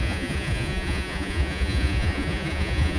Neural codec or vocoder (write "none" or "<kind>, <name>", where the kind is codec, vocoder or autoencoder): vocoder, Vocos